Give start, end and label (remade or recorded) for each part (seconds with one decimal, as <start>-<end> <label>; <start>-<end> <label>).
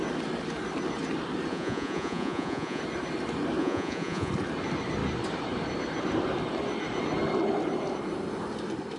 0.0-1.5 recorded; 1.5-2.8 remade; 2.8-3.6 recorded; 3.6-4.3 remade; 4.3-9.0 recorded